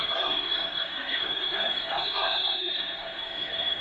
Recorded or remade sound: remade